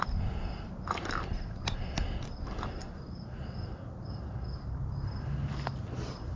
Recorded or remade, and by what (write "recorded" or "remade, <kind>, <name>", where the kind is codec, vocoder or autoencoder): recorded